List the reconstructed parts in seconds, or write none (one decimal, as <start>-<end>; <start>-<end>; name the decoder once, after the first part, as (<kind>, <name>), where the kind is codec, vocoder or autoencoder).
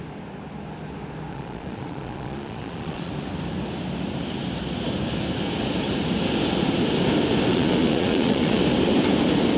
1.3-3.1 (vocoder, Vocos); 7.5-8.6